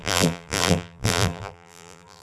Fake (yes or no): yes